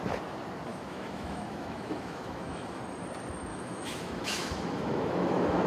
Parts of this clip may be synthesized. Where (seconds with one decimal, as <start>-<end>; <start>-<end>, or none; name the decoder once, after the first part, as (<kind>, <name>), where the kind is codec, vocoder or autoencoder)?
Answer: 0.7-2.8 (autoencoder, DAC-VAE); 3.5-5.7